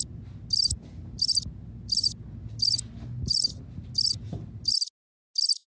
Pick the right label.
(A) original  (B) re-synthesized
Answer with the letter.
A